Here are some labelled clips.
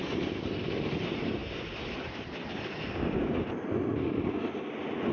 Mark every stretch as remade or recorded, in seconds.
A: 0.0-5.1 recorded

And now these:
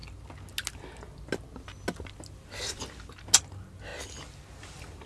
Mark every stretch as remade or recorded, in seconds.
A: 0.0-5.1 recorded

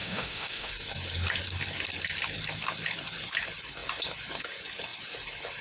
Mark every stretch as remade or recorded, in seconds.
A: 0.0-0.7 remade; 0.7-5.6 recorded

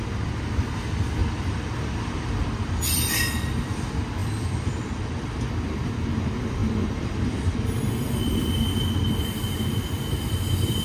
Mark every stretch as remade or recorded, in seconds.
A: 0.0-1.2 recorded; 1.2-3.8 remade; 3.8-4.2 recorded; 4.2-5.4 remade; 5.4-6.6 recorded; 6.6-8.2 remade; 8.2-10.8 recorded